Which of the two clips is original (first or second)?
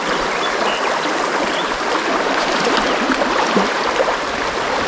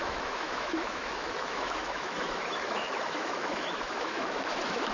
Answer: first